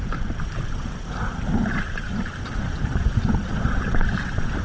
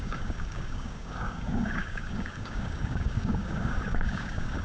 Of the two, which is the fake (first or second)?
second